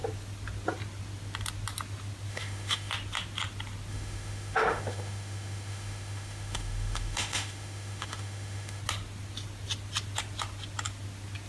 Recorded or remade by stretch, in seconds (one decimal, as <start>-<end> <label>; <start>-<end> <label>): 0.0-2.3 recorded; 2.3-2.9 remade; 2.9-3.9 recorded; 3.9-8.8 remade; 8.8-11.5 recorded